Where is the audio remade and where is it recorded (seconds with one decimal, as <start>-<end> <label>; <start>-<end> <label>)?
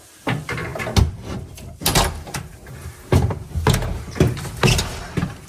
0.0-5.5 recorded